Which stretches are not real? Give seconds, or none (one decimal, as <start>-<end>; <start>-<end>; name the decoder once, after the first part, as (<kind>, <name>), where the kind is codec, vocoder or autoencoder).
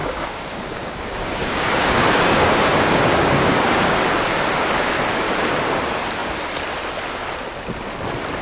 0.0-4.0 (codec, DAC)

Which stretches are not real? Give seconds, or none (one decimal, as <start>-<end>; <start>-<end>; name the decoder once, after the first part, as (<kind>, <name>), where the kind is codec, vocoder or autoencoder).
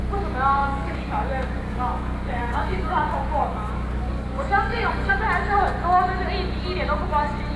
0.6-5.1 (codec, DAC)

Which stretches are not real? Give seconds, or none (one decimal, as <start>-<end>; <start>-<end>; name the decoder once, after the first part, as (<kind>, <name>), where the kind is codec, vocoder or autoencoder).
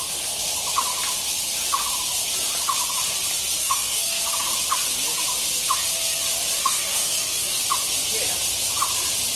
3.6-4.2 (codec, DAC); 6.6-7.6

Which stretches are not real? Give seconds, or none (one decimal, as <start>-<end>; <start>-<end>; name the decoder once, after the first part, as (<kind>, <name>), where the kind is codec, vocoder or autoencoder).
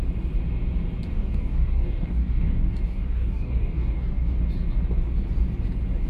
1.1-4.4 (codec, DAC)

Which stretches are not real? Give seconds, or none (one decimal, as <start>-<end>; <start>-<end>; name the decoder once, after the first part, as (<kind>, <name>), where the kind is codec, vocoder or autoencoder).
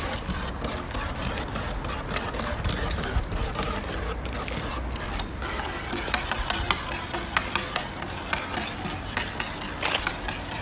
none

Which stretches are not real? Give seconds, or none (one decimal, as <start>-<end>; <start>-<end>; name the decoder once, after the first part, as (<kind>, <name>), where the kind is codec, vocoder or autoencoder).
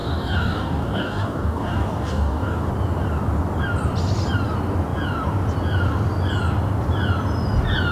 0.0-2.7 (codec, DAC)